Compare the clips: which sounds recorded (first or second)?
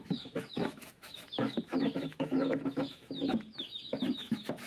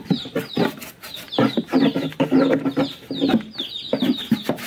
second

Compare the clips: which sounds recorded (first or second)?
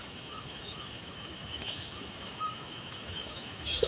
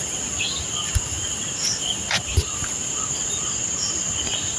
second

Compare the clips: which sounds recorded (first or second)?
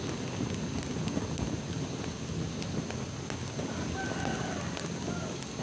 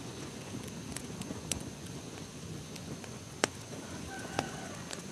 first